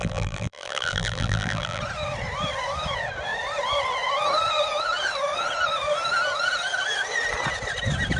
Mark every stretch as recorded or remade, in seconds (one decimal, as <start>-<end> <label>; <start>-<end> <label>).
0.0-1.8 remade; 1.8-8.2 recorded